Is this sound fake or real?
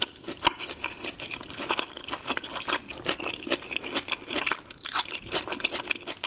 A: fake